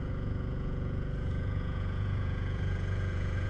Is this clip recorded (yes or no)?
no